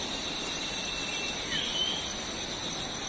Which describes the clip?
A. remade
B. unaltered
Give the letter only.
B